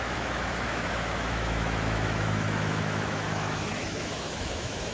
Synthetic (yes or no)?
yes